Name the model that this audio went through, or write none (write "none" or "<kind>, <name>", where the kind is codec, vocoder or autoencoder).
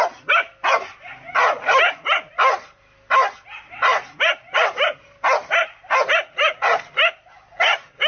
none